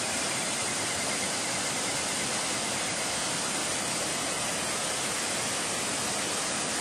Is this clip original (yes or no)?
yes